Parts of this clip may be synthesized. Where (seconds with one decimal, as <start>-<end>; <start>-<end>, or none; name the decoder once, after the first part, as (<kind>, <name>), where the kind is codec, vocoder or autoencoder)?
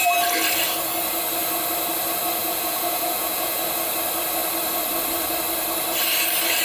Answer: 2.4-3.6 (vocoder, Vocos)